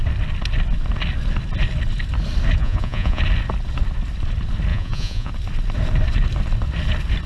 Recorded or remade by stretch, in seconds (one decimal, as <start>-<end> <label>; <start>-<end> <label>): 0.0-2.6 recorded; 2.6-3.2 remade; 3.2-4.7 recorded; 4.7-5.3 remade; 5.3-7.3 recorded